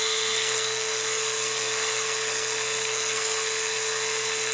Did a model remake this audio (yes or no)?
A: yes